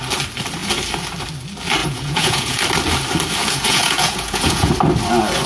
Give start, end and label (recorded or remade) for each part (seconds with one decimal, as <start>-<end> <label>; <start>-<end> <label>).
0.0-1.8 recorded; 1.8-2.6 remade; 2.6-3.4 recorded; 3.4-4.7 remade; 4.7-5.5 recorded